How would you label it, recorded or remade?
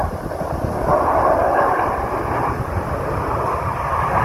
remade